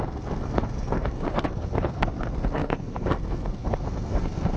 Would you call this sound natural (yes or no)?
no